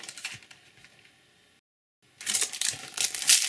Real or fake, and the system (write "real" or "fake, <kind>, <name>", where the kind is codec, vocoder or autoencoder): real